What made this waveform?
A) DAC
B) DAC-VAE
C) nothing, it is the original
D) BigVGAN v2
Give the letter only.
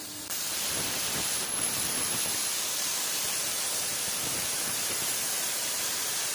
D